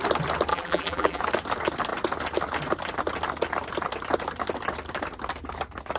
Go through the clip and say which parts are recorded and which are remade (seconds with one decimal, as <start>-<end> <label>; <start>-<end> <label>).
0.0-0.5 recorded; 0.5-1.2 remade; 1.2-6.0 recorded

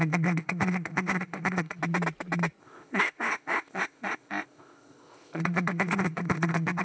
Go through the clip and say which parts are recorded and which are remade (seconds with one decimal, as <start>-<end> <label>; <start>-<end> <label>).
0.0-1.8 remade; 1.8-2.6 recorded; 2.6-6.8 remade

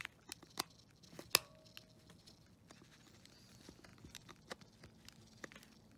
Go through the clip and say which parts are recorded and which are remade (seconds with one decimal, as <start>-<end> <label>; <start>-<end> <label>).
0.0-6.0 recorded